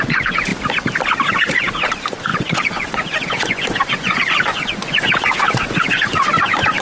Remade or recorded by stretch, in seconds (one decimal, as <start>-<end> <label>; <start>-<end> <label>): 0.0-0.5 remade; 0.5-1.3 recorded; 1.3-6.8 remade